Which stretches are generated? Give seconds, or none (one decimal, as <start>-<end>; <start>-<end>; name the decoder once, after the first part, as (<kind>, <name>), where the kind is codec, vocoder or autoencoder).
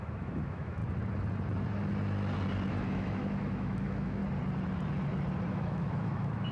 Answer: 0.0-0.8 (autoencoder, DAC-VAE); 2.7-4.2; 5.5-6.5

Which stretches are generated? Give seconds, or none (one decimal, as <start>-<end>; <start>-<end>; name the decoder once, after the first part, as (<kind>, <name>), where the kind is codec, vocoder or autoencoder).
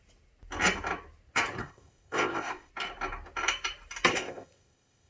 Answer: 1.6-2.7 (codec, ZipCodec); 4.1-5.1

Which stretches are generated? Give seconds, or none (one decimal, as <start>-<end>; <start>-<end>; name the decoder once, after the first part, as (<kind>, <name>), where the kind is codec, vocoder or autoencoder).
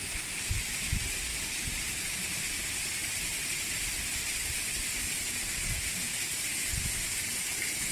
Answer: none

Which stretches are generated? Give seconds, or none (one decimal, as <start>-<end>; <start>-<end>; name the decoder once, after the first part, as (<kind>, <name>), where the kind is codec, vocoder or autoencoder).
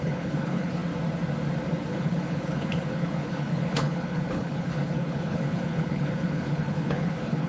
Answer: 0.0-0.8 (codec, HILCodec); 1.9-7.5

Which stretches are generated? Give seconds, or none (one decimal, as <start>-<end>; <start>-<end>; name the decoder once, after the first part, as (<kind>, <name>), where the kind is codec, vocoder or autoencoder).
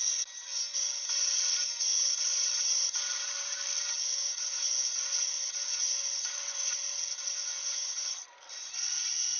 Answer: 4.2-6.1 (vocoder, Vocos); 7.5-8.0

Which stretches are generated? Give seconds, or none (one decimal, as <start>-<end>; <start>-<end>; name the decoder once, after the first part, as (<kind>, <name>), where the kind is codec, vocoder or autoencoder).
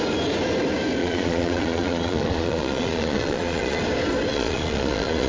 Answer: 1.0-3.8 (vocoder, Vocos); 4.3-5.3